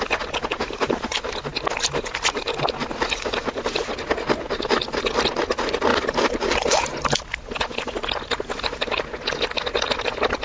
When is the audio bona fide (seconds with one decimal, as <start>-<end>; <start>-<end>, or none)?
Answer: 0.0-10.4